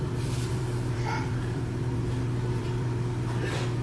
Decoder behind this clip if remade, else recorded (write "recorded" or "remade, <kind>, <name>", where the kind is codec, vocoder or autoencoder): remade, vocoder, BigVGAN v2